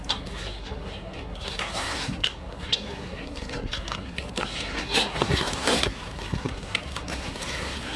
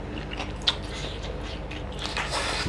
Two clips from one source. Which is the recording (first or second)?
second